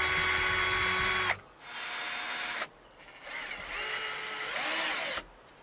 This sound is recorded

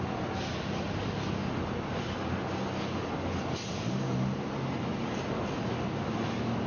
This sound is recorded